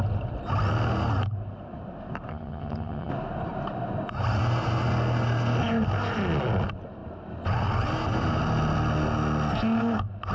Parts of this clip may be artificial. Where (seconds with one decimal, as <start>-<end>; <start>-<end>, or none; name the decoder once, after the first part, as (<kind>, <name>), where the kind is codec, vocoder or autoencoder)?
2.3-3.1 (vocoder, HiFi-GAN)